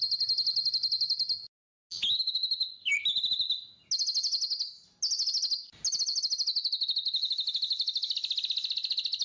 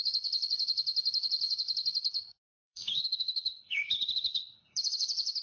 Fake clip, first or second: second